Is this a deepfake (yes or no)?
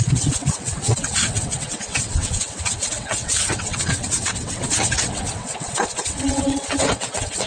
yes